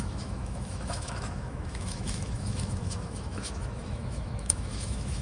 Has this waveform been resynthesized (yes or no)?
yes